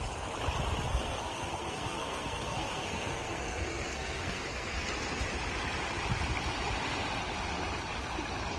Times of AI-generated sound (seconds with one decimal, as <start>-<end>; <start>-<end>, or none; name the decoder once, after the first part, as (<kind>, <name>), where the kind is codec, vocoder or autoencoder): 0.9-4.9 (codec, SNAC)